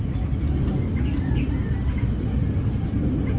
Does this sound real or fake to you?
real